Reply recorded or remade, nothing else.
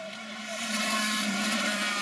remade